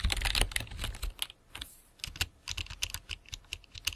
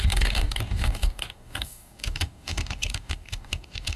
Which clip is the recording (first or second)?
first